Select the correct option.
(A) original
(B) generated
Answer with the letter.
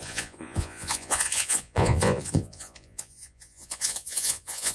B